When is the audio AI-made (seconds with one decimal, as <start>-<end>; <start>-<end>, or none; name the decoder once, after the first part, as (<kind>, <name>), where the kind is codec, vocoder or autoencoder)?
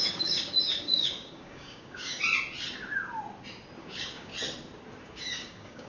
0.0-2.2 (codec, DAC); 3.8-4.3; 5.0-5.9